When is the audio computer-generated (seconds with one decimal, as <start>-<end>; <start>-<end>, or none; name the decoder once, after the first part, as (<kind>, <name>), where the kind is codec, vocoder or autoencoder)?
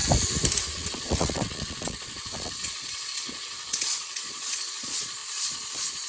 0.7-6.1 (vocoder, Vocos)